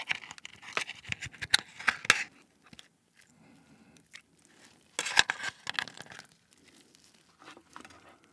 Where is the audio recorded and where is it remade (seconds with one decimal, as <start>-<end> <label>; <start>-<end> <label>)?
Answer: 0.0-8.3 recorded